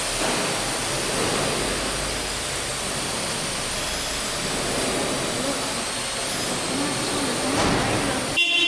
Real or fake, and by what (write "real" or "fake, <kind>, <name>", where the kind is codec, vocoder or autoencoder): real